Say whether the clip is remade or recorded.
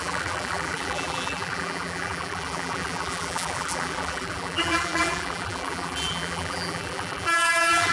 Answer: remade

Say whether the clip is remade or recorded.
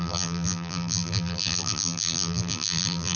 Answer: remade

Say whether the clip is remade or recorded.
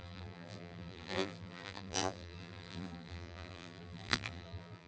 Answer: remade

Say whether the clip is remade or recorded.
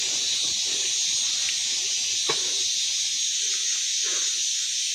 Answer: recorded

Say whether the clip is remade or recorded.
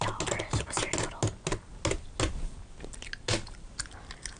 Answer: recorded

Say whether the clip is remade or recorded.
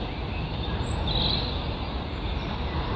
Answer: recorded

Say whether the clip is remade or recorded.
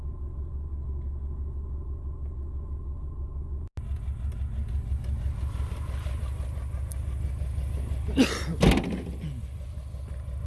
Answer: recorded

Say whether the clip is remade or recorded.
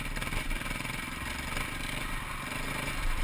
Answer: recorded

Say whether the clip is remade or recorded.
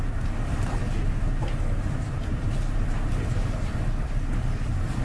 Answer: remade